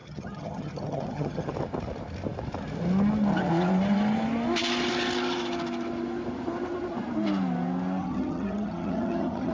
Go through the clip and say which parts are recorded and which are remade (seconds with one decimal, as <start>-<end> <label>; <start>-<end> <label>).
0.0-1.5 remade; 1.5-8.0 recorded; 8.0-9.5 remade